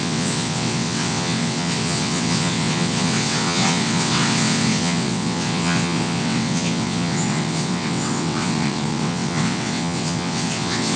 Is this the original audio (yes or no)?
no